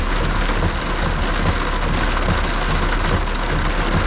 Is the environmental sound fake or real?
real